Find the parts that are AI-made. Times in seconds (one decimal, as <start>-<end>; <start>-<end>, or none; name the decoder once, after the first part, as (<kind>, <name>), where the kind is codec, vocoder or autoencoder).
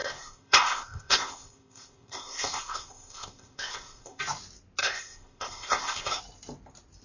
0.0-4.2 (codec, ZipCodec); 4.8-6.2